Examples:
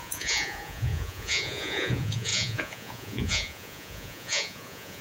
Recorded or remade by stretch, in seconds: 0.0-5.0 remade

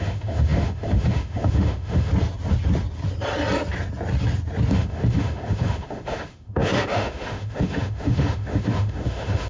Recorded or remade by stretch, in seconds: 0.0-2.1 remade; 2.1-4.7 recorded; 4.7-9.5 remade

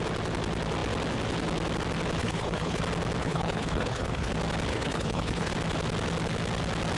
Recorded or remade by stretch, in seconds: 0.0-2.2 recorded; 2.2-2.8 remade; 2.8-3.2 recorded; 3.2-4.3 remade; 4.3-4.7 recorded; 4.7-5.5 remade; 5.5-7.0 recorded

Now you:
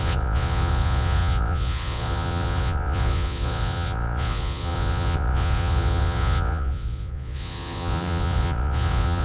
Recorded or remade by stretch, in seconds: 0.0-9.2 remade